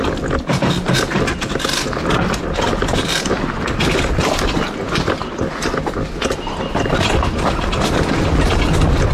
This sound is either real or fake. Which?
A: real